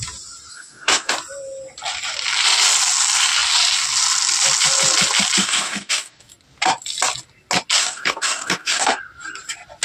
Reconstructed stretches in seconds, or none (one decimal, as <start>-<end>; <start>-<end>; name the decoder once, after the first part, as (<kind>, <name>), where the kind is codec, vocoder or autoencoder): 0.5-1.1 (codec, DAC); 5.4-6.3; 7.8-9.0

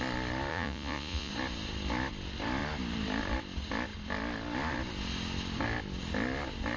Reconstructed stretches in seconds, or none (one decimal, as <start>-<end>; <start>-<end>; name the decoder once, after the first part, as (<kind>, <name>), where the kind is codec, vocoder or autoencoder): 0.5-1.3 (vocoder, Vocos)

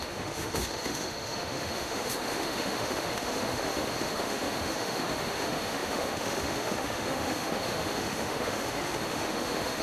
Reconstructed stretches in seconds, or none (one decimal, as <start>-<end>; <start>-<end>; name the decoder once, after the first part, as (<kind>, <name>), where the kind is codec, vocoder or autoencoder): 0.0-9.8 (autoencoder, DAC-VAE)

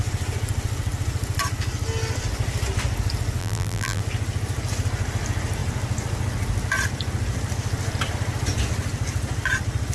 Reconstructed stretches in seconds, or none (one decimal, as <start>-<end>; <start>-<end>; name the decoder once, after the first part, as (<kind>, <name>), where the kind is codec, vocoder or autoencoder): 3.4-4.0 (vocoder, BigVGAN v2)

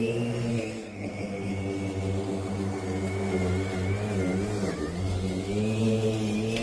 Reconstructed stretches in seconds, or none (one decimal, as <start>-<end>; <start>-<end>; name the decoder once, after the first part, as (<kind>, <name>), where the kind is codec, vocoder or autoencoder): 0.5-1.5 (codec, SNAC)

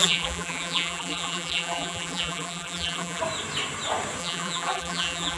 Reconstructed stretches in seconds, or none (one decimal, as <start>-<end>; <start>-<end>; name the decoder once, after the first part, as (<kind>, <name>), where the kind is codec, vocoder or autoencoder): 0.0-3.2 (vocoder, BigVGAN v2); 4.2-5.4

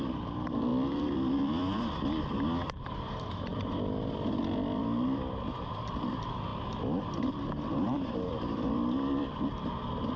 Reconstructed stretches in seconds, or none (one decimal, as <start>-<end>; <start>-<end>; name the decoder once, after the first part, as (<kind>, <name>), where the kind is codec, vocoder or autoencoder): 0.0-6.5 (vocoder, BigVGAN v2); 7.1-10.2

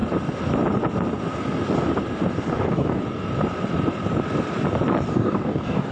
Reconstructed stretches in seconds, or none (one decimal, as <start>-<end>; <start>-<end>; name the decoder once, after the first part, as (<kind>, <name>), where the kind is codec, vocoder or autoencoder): 2.5-3.0 (codec, DAC); 5.1-5.9